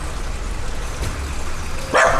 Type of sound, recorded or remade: recorded